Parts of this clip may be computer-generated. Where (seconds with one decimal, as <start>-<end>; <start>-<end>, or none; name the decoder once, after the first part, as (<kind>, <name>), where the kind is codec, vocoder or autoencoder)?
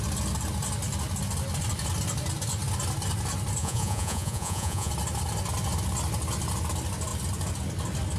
3.6-4.9 (vocoder, Vocos)